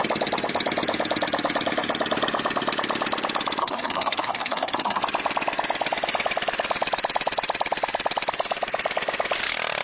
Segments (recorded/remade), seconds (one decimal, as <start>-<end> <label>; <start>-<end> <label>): 0.0-3.6 recorded; 3.6-5.0 remade; 5.0-9.8 recorded